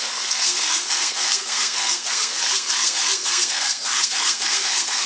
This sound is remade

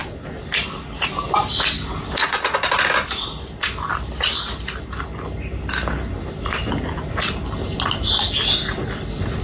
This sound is recorded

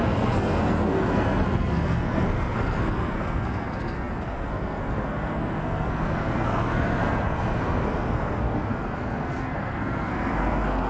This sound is remade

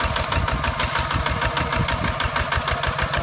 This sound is recorded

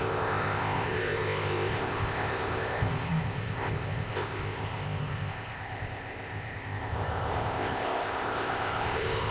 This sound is remade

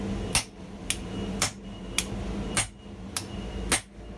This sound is recorded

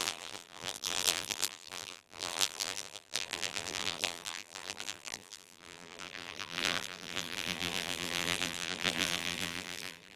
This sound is remade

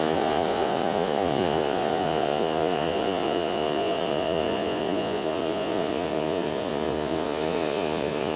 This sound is remade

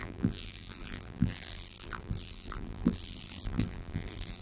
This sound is remade